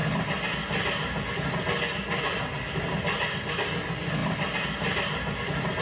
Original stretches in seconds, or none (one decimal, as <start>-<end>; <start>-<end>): 0.0-5.8